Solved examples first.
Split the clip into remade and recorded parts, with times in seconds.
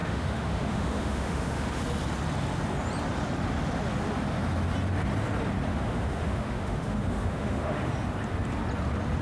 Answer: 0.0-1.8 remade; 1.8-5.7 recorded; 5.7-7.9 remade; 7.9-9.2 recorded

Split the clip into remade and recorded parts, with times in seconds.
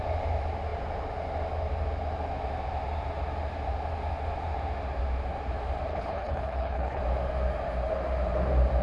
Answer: 0.0-5.9 recorded; 5.9-7.0 remade; 7.0-8.8 recorded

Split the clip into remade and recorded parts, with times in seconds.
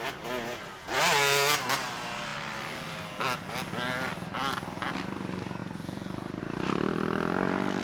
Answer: 0.0-7.8 recorded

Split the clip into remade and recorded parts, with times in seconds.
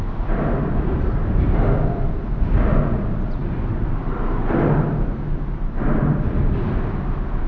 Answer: 0.0-7.5 recorded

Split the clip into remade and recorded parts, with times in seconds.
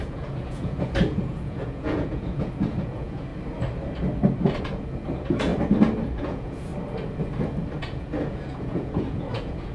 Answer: 0.0-3.3 remade; 3.3-4.6 recorded; 4.6-5.5 remade; 5.5-6.2 recorded; 6.2-6.7 remade; 6.7-7.8 recorded; 7.8-9.7 remade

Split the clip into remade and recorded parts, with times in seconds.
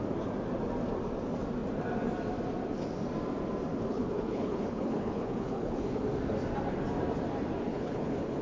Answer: 0.0-3.9 recorded; 3.9-6.0 remade; 6.0-7.7 recorded; 7.7-8.4 remade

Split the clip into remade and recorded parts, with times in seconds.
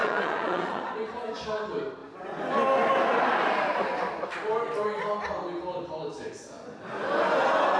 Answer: 0.0-0.9 remade; 0.9-7.8 recorded